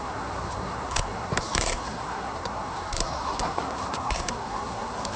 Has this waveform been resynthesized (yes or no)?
yes